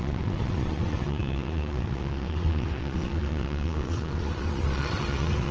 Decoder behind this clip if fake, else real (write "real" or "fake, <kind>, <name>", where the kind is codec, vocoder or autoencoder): fake, vocoder, WaveNeXt